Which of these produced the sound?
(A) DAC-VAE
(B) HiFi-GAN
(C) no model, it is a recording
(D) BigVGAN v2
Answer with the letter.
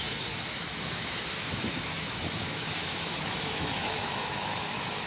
A